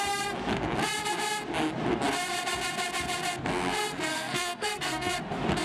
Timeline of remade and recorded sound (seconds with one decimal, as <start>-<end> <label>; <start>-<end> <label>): 0.0-4.1 recorded; 4.1-5.1 remade; 5.1-5.6 recorded